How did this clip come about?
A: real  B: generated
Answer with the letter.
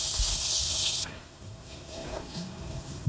B